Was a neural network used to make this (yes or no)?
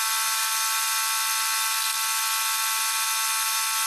no